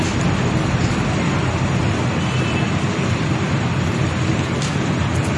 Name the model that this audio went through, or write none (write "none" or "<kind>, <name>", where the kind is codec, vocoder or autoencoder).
none